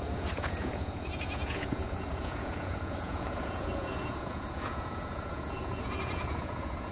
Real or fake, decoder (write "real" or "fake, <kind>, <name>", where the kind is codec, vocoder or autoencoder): fake, vocoder, Vocos